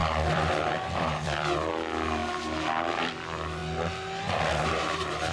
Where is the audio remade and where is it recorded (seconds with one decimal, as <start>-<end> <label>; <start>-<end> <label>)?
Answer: 0.0-2.2 remade; 2.2-2.9 recorded; 2.9-3.6 remade; 3.6-4.6 recorded; 4.6-5.3 remade